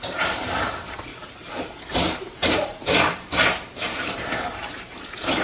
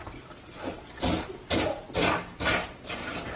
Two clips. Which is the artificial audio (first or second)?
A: first